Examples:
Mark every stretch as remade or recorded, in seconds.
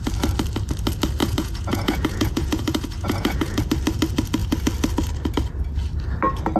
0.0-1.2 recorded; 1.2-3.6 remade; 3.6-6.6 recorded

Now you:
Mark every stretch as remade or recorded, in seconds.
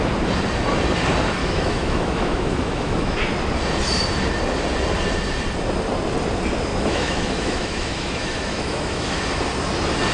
0.0-1.4 recorded; 1.4-3.2 remade; 3.2-6.7 recorded; 6.7-9.2 remade; 9.2-10.1 recorded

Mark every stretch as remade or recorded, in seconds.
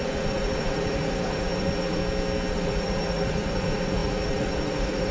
0.0-2.0 remade; 2.0-2.5 recorded; 2.5-5.1 remade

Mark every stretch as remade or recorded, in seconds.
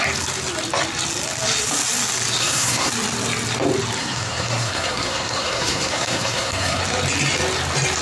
0.0-2.4 recorded; 2.4-2.9 remade; 2.9-4.0 recorded; 4.0-6.8 remade; 6.8-8.0 recorded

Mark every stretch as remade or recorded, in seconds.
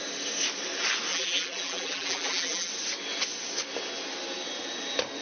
0.0-1.1 recorded; 1.1-2.7 remade; 2.7-5.2 recorded